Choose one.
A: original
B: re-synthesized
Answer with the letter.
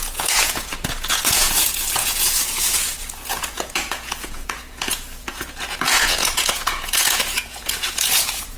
B